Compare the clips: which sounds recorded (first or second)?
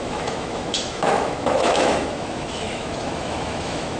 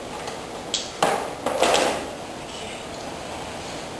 second